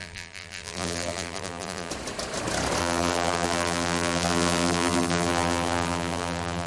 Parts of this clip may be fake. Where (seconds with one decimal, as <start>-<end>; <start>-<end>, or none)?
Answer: 0.0-1.9; 2.8-6.7